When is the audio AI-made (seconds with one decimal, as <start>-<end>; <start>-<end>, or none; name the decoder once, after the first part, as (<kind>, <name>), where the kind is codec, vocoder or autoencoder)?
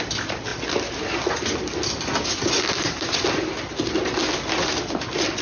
none